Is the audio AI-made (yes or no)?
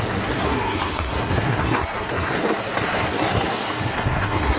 yes